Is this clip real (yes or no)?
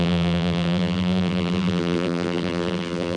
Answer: no